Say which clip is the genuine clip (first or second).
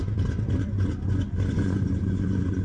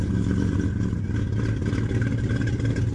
second